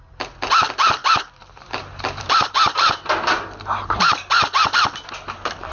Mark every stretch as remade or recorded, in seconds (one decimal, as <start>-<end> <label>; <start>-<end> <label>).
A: 0.0-1.4 recorded; 1.4-4.8 remade; 4.8-5.7 recorded